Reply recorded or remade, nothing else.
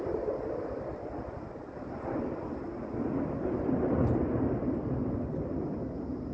recorded